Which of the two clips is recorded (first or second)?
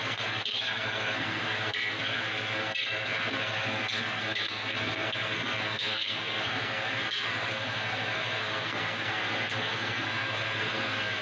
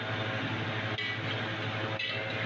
second